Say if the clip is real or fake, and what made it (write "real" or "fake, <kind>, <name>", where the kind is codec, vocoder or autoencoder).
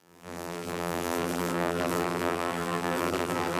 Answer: fake, vocoder, BigVGAN v2